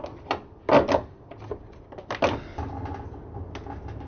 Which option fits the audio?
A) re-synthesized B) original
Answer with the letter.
B